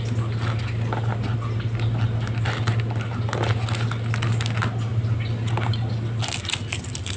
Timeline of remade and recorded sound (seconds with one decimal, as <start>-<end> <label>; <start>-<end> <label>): 0.0-7.2 recorded